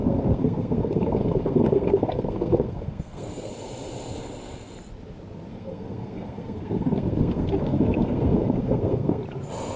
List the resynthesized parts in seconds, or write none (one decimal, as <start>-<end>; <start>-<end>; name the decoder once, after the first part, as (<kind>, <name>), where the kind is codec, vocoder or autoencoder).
0.0-3.5 (codec, SNAC); 5.5-9.2